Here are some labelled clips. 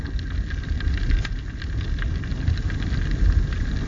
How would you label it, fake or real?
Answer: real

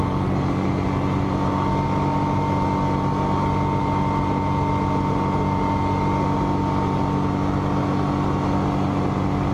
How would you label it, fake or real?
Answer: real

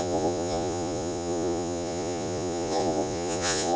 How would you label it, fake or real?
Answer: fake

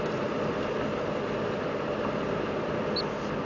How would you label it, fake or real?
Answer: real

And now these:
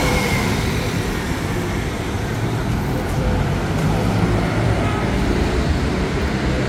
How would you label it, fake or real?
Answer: fake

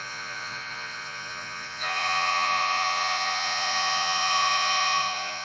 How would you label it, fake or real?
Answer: fake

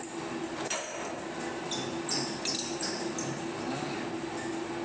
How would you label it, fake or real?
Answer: real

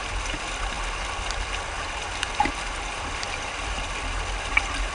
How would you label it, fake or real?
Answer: real